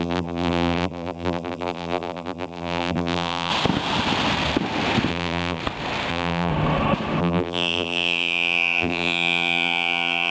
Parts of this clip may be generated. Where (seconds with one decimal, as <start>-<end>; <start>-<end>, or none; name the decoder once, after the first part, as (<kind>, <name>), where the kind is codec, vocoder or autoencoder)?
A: 0.0-3.5 (vocoder, BigVGAN v2); 5.1-5.6; 6.1-6.5; 7.2-10.3